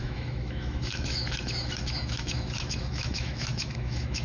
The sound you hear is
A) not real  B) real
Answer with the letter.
A